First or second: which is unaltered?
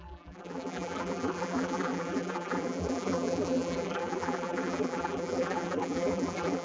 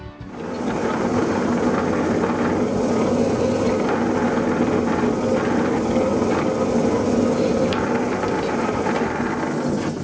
second